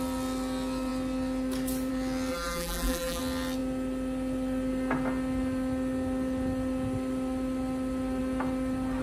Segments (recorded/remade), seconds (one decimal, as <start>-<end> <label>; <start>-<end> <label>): 0.0-2.3 recorded; 2.3-3.2 remade; 3.2-9.0 recorded